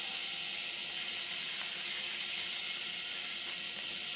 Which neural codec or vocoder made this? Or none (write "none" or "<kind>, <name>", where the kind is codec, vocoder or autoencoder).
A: none